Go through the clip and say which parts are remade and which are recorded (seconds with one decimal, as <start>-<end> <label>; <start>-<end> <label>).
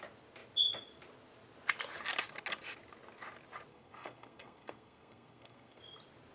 0.0-3.7 recorded; 3.7-5.8 remade; 5.8-6.3 recorded